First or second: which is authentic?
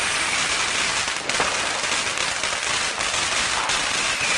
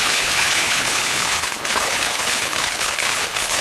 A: first